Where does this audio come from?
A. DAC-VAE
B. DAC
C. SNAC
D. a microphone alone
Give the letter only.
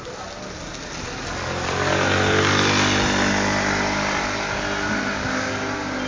D